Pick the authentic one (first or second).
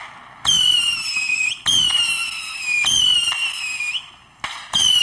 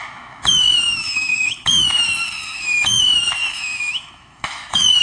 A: first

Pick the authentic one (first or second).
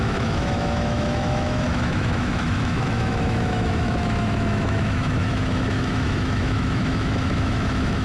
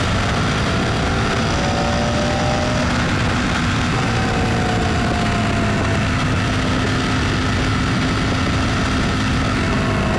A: second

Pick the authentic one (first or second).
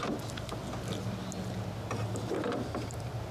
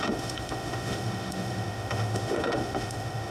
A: first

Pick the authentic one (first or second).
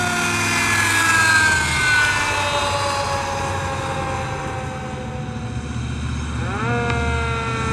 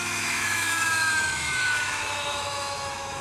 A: first